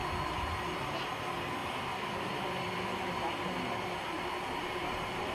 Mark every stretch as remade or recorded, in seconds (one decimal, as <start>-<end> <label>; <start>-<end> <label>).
0.0-0.8 recorded; 0.8-1.6 remade; 1.6-4.6 recorded; 4.6-5.3 remade